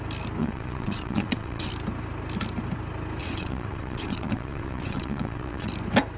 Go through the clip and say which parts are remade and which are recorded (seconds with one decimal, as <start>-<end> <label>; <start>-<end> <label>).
0.0-0.4 recorded; 0.4-1.7 remade; 1.7-3.2 recorded; 3.2-5.7 remade; 5.7-6.2 recorded